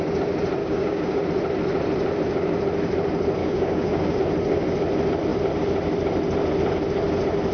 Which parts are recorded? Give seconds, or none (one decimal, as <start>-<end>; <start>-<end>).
0.0-0.6; 1.2-3.4; 4.2-7.5